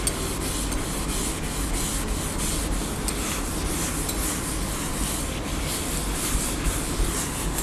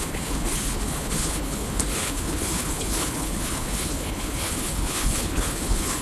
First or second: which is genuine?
first